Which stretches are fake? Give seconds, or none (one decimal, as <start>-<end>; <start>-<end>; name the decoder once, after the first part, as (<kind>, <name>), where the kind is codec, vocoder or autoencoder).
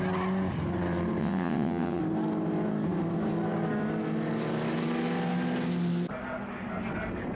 1.2-2.0 (vocoder, WaveNeXt)